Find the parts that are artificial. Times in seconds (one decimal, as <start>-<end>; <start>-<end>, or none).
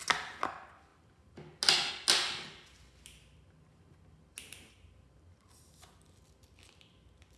none